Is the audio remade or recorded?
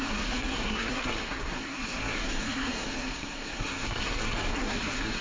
remade